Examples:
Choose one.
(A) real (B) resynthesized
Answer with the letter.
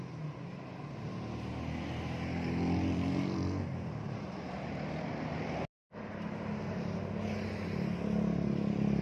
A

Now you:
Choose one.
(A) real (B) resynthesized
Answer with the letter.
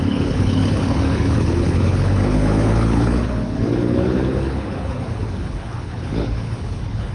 B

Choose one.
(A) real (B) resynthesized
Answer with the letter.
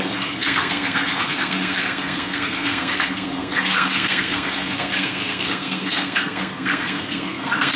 B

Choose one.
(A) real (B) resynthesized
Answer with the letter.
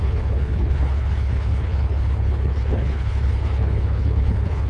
B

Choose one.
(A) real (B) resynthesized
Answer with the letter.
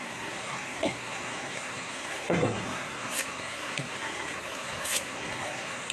B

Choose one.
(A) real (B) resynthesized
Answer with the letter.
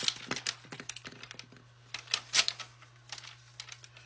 A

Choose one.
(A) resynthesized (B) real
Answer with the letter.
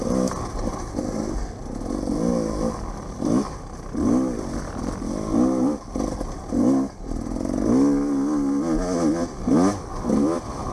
B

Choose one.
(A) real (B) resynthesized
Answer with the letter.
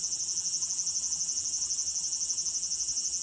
B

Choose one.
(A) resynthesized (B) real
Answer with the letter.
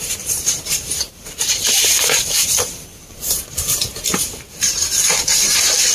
A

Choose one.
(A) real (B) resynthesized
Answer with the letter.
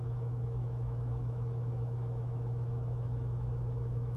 B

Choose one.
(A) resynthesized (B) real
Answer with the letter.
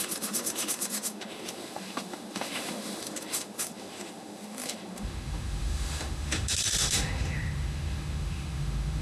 A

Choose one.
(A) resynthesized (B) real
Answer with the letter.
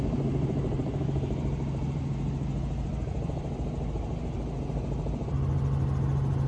B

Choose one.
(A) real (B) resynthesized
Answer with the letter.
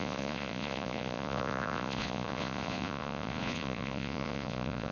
B